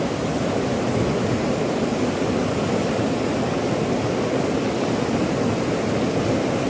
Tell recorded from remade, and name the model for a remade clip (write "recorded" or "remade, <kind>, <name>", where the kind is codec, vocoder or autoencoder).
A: recorded